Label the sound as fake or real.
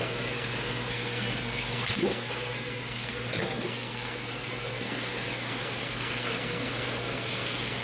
fake